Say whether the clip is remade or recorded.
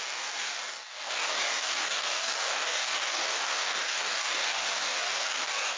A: remade